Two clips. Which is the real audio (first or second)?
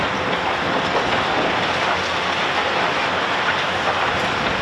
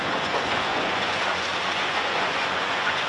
first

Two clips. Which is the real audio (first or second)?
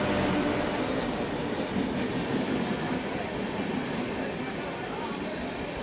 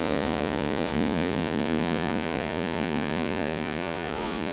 first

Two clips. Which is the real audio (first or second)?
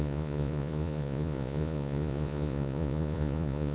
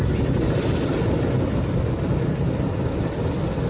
second